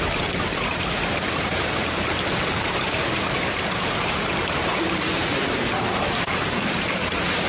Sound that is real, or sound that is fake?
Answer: fake